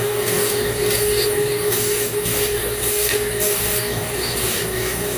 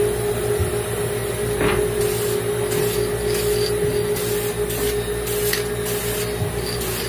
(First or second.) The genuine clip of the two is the second